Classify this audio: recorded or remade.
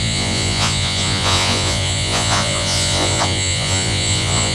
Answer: remade